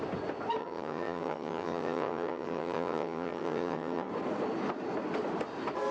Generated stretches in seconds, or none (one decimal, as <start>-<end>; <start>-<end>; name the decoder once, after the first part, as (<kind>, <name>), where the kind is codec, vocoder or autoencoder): 0.6-4.1 (vocoder, HiFi-GAN)